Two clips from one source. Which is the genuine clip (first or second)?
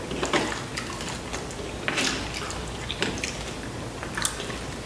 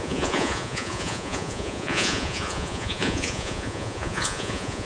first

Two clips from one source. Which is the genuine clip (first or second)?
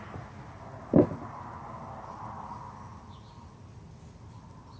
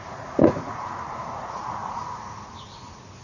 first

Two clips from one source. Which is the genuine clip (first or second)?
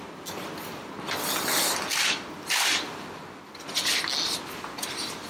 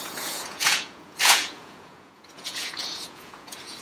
first